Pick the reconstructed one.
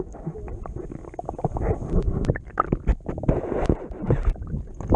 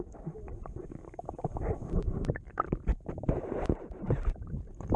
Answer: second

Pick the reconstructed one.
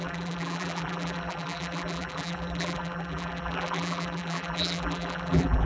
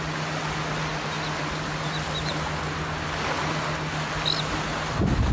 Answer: first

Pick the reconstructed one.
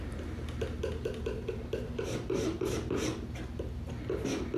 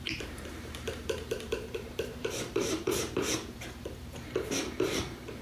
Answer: second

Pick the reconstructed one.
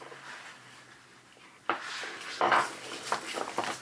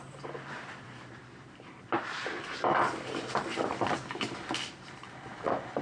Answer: second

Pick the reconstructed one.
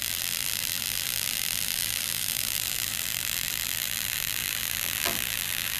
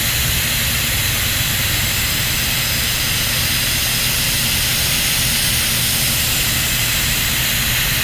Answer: first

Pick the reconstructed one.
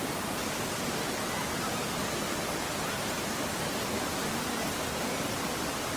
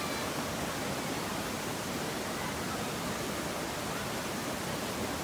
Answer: second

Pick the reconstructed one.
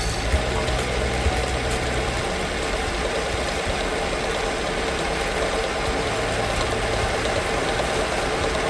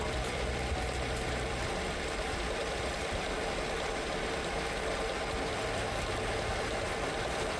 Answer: second